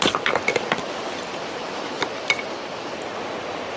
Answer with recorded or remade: recorded